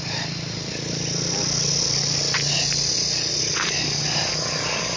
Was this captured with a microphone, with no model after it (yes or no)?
yes